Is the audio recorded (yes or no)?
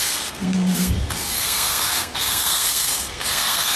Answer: no